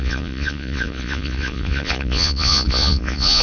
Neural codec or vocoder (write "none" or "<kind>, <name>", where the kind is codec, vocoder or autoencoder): vocoder, Vocos